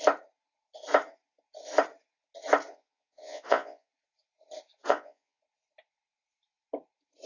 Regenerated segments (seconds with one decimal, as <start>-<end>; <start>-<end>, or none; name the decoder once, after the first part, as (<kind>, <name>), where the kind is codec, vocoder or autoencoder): 2.7-3.9 (vocoder, Vocos); 4.8-5.4